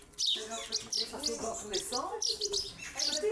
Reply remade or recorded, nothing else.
recorded